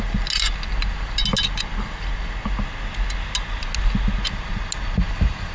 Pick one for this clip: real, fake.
real